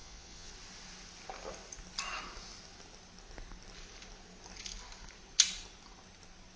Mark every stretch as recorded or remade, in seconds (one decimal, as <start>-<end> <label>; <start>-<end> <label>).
0.0-0.5 remade; 0.5-6.6 recorded